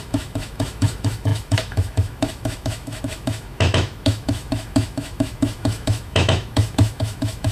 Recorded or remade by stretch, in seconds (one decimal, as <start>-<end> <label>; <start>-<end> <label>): 0.0-7.5 remade